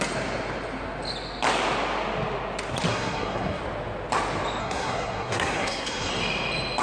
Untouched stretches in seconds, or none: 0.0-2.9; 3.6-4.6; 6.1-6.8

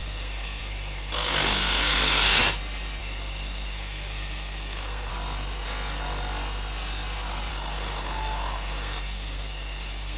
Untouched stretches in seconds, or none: 2.4-3.0; 5.1-7.5

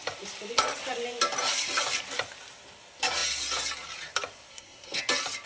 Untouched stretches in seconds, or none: 0.0-4.5; 5.0-5.5

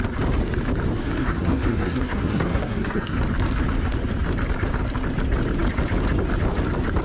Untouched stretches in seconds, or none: 0.0-1.0; 3.2-7.0